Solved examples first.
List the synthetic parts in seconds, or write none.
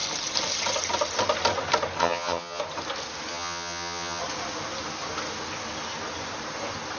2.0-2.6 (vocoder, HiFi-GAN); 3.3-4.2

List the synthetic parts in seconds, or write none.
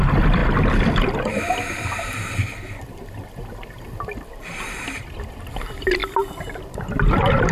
0.4-2.9 (vocoder, BigVGAN v2)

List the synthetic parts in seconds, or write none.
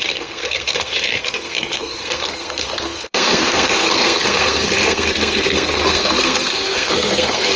0.0-7.6 (codec, SNAC)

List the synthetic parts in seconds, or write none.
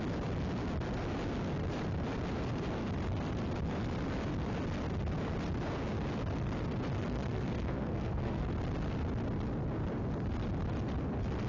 7.0-8.5 (codec, SNAC)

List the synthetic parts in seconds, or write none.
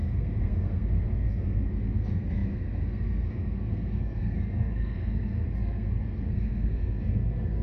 0.0-7.6 (codec, SNAC)